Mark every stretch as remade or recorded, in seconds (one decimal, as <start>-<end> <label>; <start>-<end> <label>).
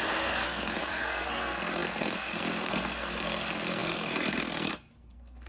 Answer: 0.0-5.5 remade